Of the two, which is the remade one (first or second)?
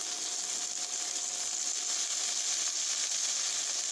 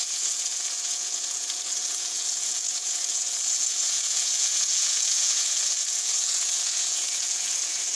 second